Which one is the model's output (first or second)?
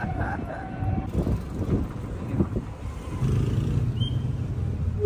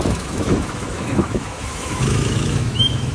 second